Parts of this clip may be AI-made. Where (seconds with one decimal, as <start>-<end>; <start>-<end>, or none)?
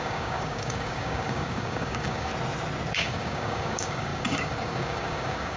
0.0-2.3; 2.9-5.6